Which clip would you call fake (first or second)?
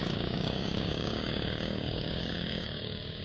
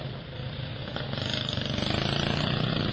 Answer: first